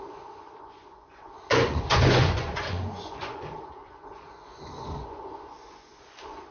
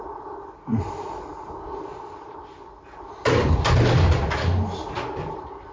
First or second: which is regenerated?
first